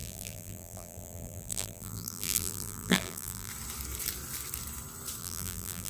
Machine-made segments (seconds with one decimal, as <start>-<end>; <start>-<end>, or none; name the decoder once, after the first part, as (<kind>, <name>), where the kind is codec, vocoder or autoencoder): 0.0-3.5 (vocoder, BigVGAN v2); 5.2-5.9